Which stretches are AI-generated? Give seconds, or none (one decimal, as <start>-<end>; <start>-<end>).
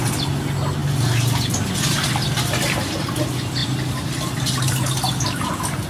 none